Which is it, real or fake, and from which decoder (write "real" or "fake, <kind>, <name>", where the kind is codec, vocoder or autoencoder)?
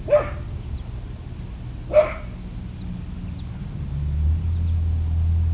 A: real